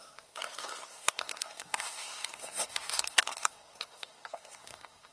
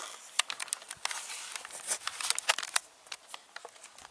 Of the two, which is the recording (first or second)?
second